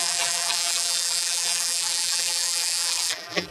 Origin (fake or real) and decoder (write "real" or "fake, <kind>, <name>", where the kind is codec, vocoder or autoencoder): fake, vocoder, BigVGAN v2